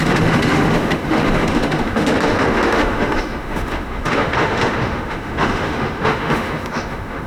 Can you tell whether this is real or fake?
fake